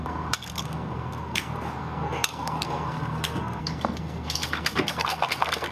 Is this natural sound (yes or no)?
no